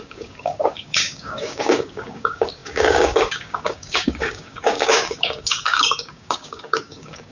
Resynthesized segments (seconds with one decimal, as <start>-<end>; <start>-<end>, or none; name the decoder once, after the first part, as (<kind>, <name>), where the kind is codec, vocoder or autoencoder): 0.0-7.3 (codec, DAC)